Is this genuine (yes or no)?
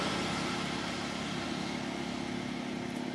yes